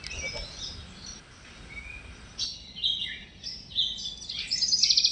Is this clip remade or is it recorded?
recorded